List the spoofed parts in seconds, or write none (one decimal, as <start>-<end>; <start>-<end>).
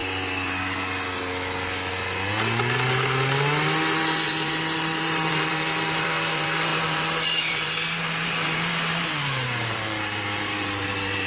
4.0-11.3